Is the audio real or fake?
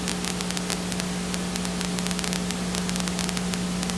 real